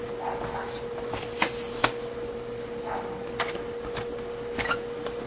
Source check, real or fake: real